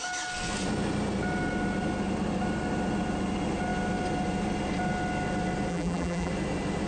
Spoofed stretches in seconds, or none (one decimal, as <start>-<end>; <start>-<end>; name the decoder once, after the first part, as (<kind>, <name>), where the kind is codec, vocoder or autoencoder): 5.7-6.3 (vocoder, BigVGAN v2)